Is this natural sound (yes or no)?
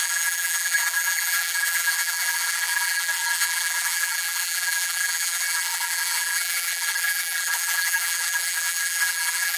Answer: no